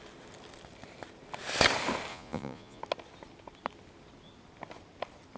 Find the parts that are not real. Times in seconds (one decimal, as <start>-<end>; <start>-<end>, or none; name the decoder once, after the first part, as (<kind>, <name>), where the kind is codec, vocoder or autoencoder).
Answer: 2.1-2.8 (vocoder, Vocos)